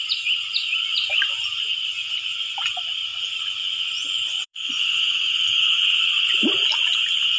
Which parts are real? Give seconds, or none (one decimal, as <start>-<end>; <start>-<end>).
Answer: 0.0-3.1; 6.5-7.4